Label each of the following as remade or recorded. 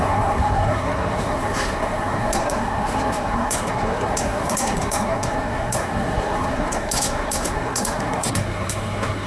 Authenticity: remade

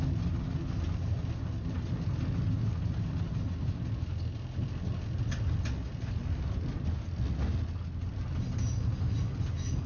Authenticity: recorded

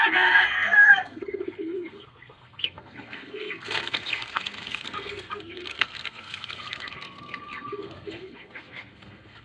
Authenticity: remade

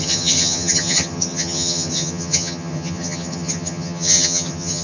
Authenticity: remade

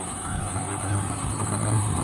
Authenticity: remade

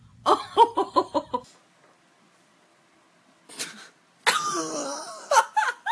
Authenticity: recorded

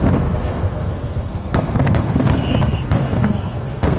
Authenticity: remade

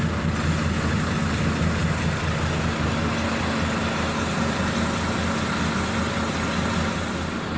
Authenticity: recorded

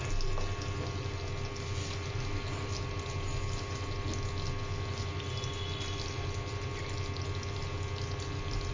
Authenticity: recorded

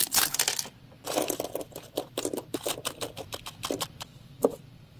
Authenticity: recorded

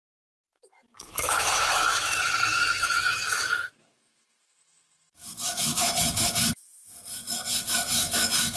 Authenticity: remade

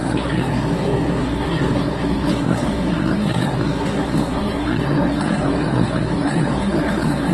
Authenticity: remade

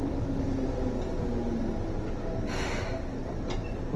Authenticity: recorded